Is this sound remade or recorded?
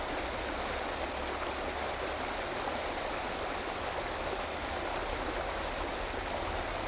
recorded